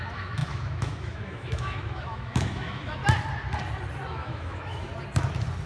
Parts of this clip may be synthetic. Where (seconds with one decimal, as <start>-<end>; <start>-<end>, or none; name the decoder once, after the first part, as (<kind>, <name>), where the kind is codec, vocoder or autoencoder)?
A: 0.0-3.0 (autoencoder, DAC-VAE); 4.1-4.9